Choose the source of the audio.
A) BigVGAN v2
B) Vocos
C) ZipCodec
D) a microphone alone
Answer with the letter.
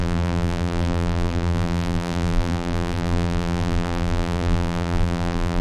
A